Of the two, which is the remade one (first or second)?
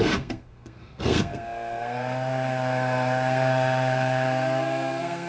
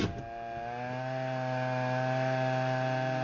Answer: first